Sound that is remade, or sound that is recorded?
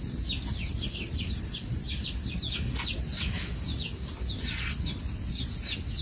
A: recorded